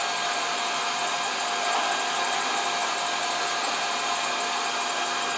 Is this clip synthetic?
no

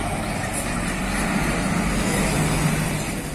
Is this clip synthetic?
no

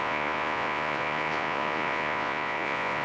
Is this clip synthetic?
yes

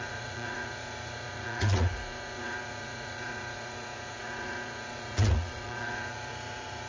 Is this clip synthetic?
yes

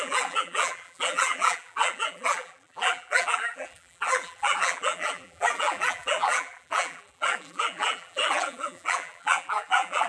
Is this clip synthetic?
yes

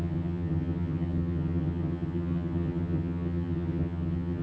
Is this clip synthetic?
yes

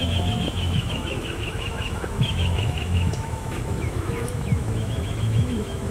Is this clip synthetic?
yes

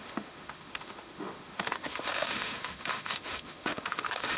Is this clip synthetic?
yes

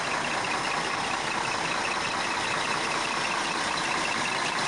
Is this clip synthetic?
no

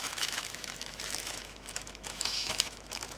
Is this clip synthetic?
yes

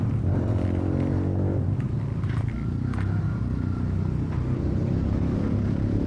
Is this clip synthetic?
no